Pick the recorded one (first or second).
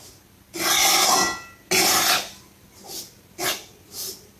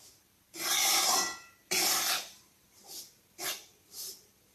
first